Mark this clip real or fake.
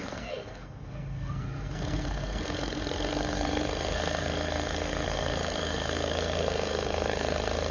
fake